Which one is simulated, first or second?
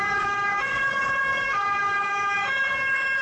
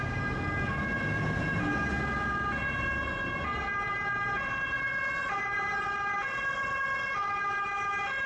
first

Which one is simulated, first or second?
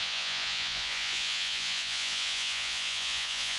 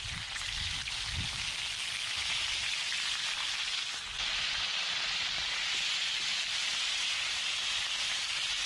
first